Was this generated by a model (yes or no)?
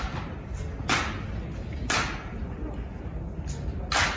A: no